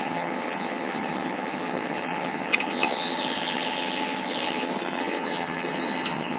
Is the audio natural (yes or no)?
no